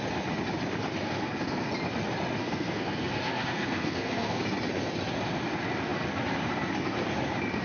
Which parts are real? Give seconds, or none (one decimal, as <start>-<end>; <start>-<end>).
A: 0.0-1.0; 1.7-2.4; 4.4-7.6